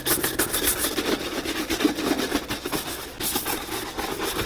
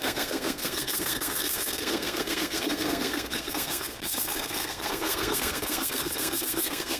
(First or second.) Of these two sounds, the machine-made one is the second